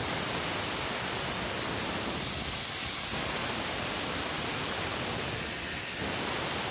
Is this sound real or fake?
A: real